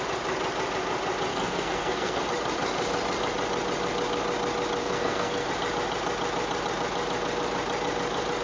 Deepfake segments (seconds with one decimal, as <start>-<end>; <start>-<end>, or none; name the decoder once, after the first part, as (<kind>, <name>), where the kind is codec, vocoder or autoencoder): 1.3-2.2 (codec, SNAC); 4.8-5.5